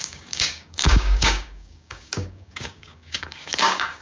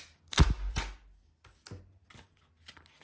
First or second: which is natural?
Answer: second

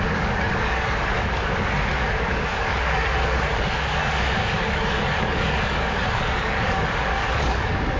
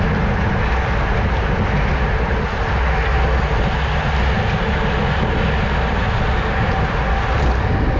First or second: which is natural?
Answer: second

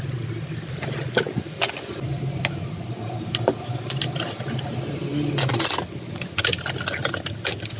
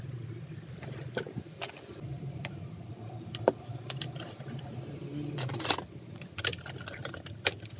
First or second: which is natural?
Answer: first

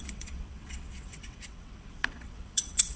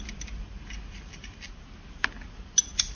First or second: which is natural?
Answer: second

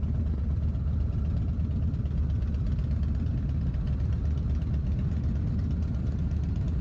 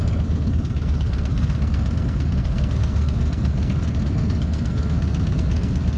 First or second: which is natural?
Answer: first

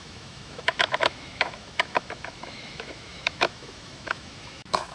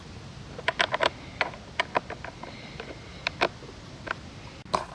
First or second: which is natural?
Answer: second